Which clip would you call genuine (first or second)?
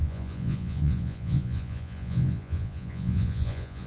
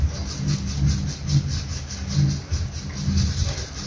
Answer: second